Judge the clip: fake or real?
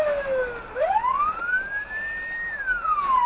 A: real